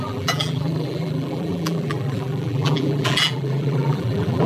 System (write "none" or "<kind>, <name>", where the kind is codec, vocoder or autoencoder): vocoder, BigVGAN v2